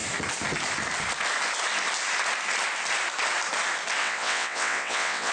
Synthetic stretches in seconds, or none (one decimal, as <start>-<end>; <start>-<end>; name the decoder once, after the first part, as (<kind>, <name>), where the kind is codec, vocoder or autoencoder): 4.0-5.3 (vocoder, WaveNeXt)